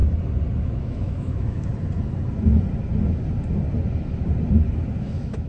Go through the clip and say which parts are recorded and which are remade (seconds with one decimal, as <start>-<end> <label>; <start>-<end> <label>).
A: 0.0-0.6 recorded; 0.6-1.7 remade; 1.7-5.0 recorded; 5.0-5.5 remade